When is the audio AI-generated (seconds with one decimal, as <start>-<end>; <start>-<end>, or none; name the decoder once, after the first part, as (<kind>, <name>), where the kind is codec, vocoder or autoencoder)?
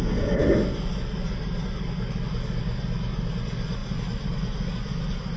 none